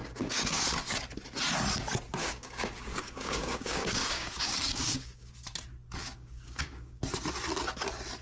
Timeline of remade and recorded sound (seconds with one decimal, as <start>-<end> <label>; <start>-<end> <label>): 0.0-0.6 remade; 0.6-2.2 recorded; 2.2-5.3 remade; 5.3-6.0 recorded; 6.0-7.0 remade; 7.0-8.2 recorded